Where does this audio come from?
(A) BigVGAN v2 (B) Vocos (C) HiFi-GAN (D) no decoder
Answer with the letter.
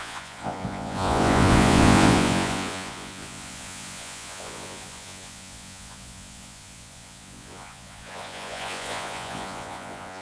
B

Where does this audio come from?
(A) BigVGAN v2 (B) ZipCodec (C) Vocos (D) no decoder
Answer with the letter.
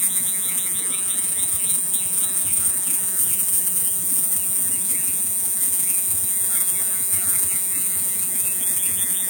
C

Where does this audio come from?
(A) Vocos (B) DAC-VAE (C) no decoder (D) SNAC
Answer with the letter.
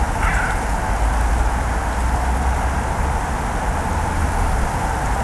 C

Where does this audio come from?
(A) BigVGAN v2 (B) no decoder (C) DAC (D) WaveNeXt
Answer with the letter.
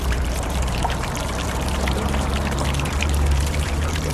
A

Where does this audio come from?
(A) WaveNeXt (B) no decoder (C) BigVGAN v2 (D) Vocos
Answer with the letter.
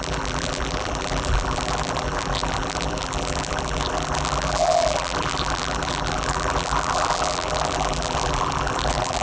C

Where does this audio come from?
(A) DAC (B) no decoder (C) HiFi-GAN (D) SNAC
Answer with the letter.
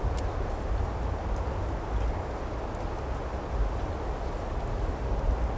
B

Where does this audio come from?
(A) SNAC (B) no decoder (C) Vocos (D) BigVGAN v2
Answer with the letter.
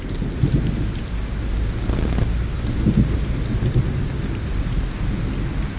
B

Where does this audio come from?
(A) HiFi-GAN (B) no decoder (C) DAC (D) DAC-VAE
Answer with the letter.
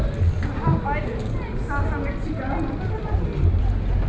B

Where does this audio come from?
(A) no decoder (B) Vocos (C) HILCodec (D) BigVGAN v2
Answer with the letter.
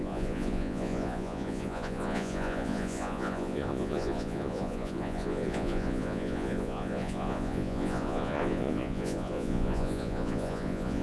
B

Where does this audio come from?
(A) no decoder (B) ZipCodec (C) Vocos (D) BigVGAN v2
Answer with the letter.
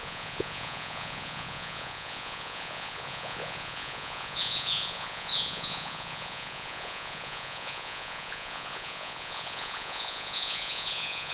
C